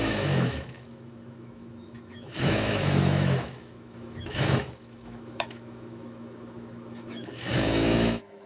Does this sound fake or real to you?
fake